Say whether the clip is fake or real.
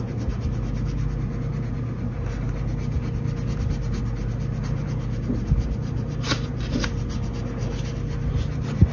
real